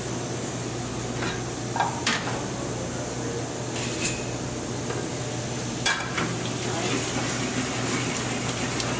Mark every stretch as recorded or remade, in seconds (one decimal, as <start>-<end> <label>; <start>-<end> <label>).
0.0-9.0 recorded